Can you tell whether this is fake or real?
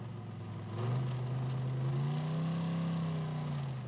real